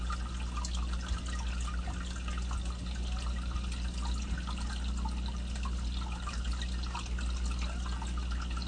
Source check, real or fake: real